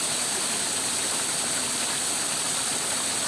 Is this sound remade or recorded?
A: recorded